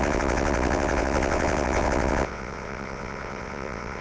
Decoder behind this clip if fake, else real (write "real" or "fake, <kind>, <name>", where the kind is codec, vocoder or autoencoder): fake, vocoder, WaveNeXt